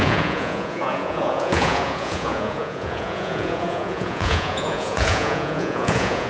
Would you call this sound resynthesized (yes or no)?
yes